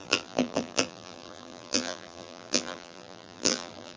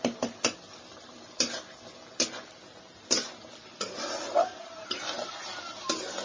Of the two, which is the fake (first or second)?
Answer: first